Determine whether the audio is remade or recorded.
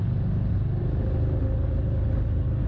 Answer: recorded